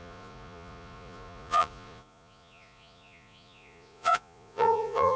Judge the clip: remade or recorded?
remade